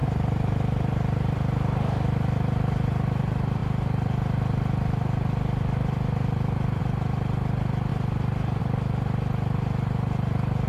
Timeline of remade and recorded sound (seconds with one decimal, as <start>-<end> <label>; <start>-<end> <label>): 0.0-3.2 remade; 3.2-7.9 recorded; 7.9-8.6 remade; 8.6-10.7 recorded